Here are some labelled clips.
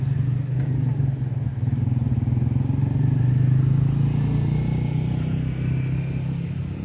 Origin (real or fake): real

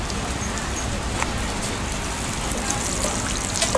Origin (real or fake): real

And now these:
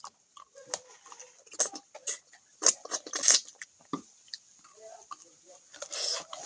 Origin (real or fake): real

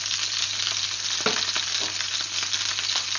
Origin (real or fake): real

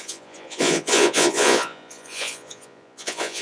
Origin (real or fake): fake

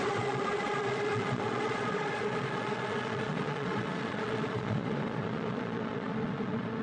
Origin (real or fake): fake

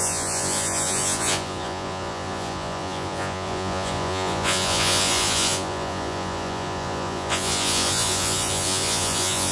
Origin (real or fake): fake